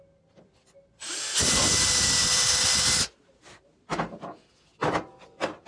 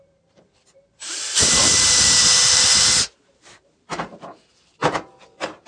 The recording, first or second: first